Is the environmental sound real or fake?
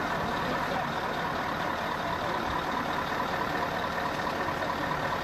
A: real